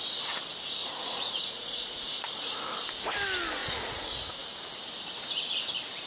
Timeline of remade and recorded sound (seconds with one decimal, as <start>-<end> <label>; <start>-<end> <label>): 0.0-0.8 recorded; 0.8-2.6 remade; 2.6-3.6 recorded; 3.6-4.3 remade; 4.3-6.1 recorded